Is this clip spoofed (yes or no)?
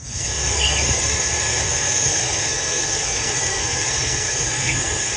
yes